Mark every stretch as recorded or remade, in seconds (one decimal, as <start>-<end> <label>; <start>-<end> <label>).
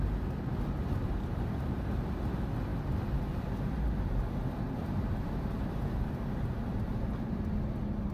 0.0-4.8 recorded; 4.8-6.1 remade; 6.1-8.1 recorded